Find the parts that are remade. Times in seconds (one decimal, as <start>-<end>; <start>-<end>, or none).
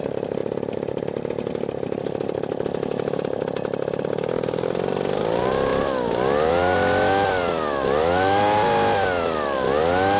none